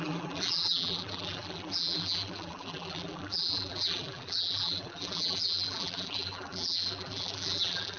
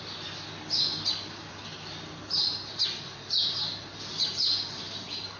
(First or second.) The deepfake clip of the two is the first